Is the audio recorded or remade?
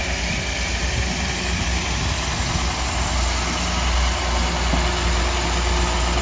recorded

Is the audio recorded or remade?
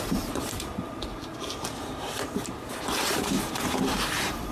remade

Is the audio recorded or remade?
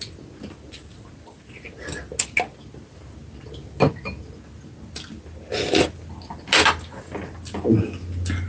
recorded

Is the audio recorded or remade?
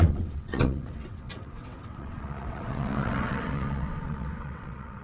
remade